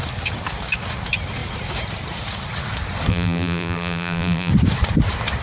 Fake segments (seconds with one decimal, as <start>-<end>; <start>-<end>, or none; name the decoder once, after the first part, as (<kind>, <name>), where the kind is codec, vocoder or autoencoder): 3.1-4.5 (vocoder, BigVGAN v2)